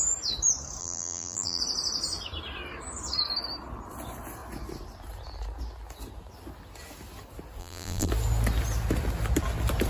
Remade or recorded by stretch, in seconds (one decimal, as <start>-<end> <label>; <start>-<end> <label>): 0.0-0.8 recorded; 0.8-1.6 remade; 1.6-7.6 recorded; 7.6-8.1 remade; 8.1-9.9 recorded